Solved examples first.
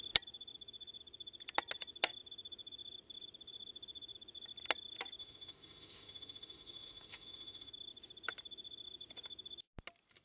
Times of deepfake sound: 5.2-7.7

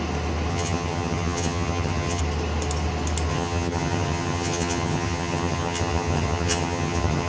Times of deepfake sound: 0.5-2.2; 3.3-7.3

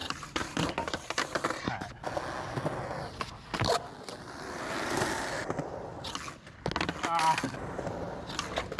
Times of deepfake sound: 0.0-1.7

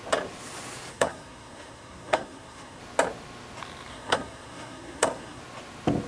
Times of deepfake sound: 0.9-2.8; 3.9-5.4

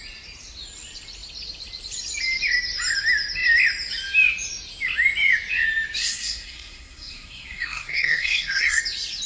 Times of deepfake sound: 6.0-8.8

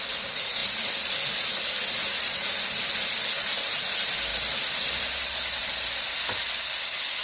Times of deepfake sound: none